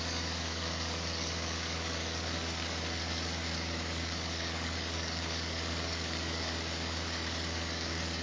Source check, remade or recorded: remade